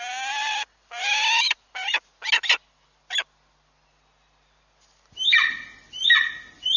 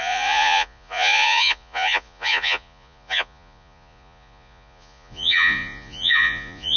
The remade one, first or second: second